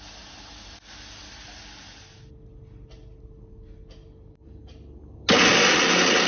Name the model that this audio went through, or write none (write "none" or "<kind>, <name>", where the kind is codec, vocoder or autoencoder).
none